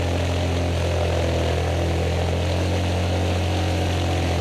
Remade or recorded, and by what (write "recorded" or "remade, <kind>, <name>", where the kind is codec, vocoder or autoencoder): recorded